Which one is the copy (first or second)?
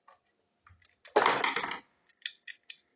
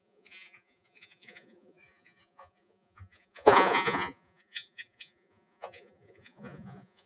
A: second